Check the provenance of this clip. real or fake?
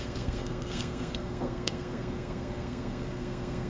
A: fake